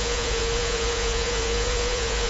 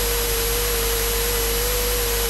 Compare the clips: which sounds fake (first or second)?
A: first